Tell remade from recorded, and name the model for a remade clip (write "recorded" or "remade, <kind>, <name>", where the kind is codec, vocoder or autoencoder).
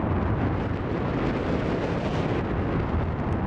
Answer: recorded